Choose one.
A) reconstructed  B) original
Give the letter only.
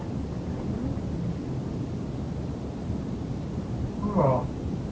B